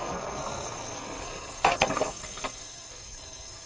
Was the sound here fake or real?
fake